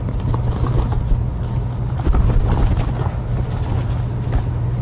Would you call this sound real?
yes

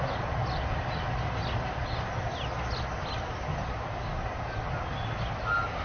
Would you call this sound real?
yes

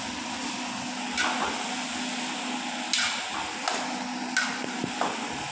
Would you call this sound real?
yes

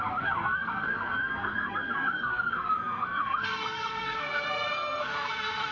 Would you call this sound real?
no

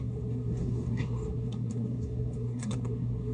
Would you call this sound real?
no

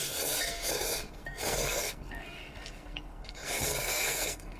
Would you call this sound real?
no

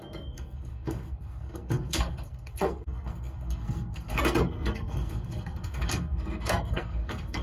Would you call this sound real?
no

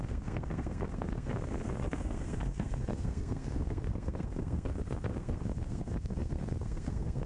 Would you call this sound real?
no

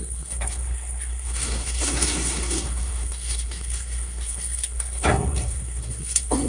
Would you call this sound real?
no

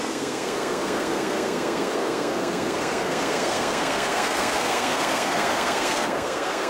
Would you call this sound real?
no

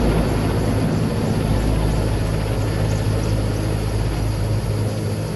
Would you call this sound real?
yes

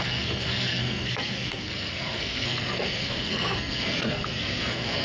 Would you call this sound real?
no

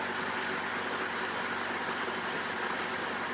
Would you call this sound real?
yes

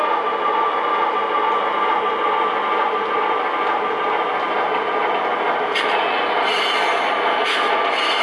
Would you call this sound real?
yes